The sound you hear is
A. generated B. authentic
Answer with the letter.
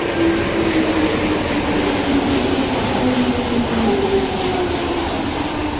B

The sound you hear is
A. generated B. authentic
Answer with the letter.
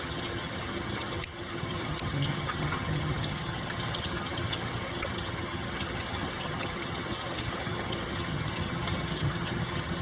A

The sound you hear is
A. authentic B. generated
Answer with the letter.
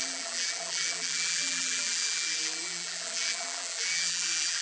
B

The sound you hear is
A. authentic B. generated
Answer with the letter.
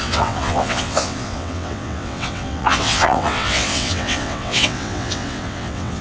B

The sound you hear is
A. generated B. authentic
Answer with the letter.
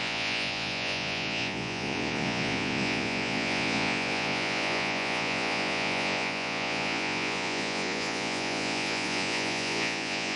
A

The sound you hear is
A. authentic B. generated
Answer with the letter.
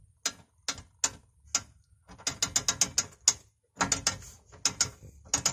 A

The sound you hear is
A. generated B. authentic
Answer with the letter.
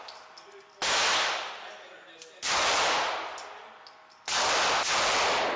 B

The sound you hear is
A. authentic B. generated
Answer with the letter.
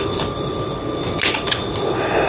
A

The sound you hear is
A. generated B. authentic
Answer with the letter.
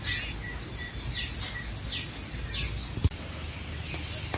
B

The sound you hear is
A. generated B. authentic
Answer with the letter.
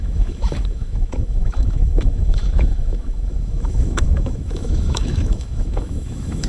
A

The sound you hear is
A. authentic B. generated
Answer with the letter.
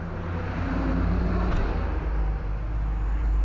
B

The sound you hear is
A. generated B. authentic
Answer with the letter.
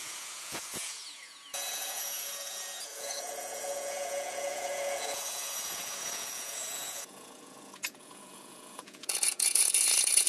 A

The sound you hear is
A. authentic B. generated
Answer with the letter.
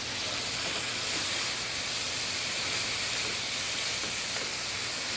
A